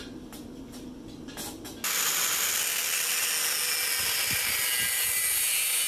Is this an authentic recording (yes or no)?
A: yes